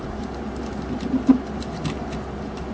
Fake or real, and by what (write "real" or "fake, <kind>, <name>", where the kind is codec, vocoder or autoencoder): real